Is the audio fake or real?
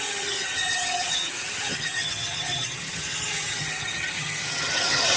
fake